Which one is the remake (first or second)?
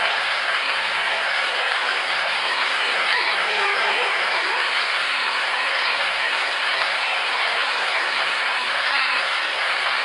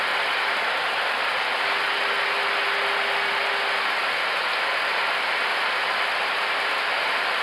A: first